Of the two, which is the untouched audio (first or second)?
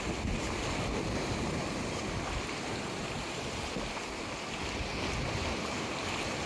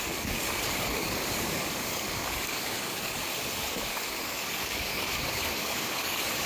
first